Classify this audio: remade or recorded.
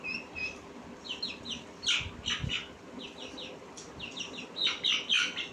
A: recorded